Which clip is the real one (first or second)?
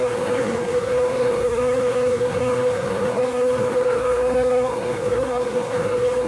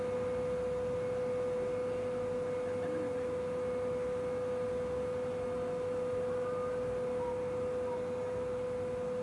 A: second